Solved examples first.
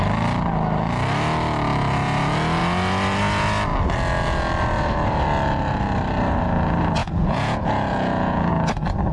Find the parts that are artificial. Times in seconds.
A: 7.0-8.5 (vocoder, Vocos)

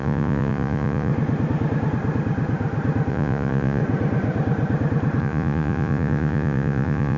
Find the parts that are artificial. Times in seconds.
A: 0.0-1.1 (vocoder, Vocos); 3.1-3.8; 5.2-7.2

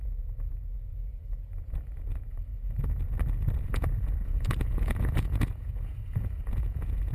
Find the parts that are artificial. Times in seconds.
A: 0.0-2.5 (vocoder, Vocos); 3.6-7.1

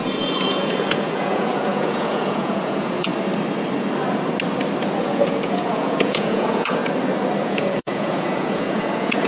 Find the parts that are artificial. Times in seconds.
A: 0.0-3.1 (vocoder, Vocos); 5.0-6.8; 7.4-9.3

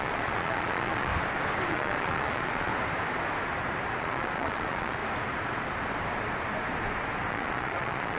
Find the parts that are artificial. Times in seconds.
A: 0.0-1.1 (vocoder, Vocos); 1.7-2.7; 4.0-5.0; 7.3-8.2

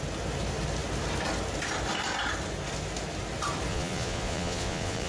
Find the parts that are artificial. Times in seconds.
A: 3.7-5.1 (vocoder, Vocos)

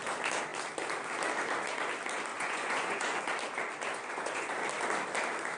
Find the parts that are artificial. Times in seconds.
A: 2.3-3.2 (vocoder, Vocos); 3.9-4.5